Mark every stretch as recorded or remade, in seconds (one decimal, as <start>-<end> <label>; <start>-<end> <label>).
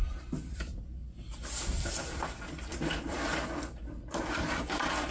0.0-1.0 remade; 1.0-1.6 recorded; 1.6-5.1 remade